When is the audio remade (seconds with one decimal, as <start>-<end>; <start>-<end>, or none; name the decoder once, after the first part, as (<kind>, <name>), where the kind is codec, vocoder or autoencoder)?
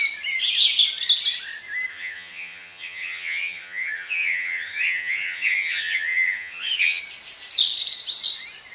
1.9-7.0 (vocoder, HiFi-GAN)